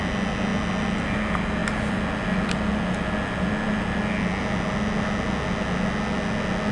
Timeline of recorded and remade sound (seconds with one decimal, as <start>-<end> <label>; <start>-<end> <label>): 0.0-6.7 recorded